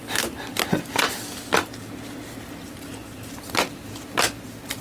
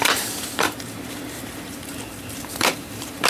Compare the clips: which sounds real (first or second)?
first